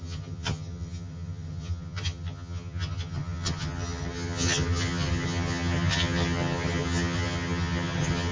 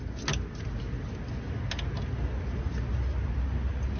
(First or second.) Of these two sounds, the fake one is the first